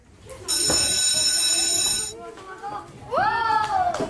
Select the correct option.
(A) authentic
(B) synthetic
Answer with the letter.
A